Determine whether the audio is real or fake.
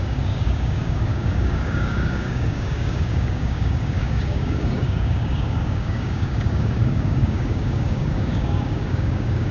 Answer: fake